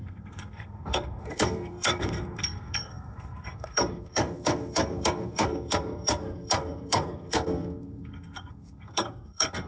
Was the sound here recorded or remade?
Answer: remade